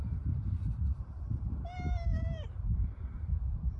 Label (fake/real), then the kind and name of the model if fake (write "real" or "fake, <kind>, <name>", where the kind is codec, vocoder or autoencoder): fake, vocoder, BigVGAN v2